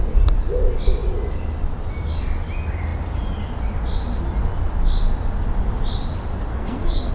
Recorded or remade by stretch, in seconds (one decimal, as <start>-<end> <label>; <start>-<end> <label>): 0.0-6.5 recorded; 6.5-7.1 remade